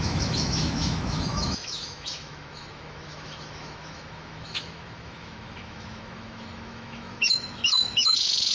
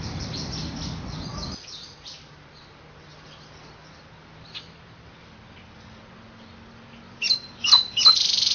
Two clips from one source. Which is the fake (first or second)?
first